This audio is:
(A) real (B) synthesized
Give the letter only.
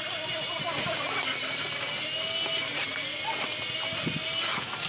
A